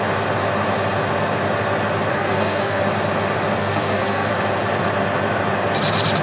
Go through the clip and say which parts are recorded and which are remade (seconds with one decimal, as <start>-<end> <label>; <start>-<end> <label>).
0.0-2.1 recorded; 2.1-2.8 remade; 2.8-3.6 recorded; 3.6-4.3 remade; 4.3-6.2 recorded